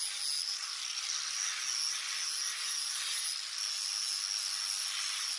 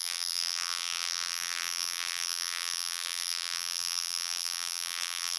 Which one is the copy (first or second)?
second